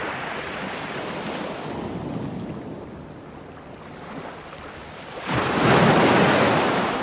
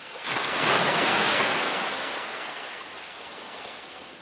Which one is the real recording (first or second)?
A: first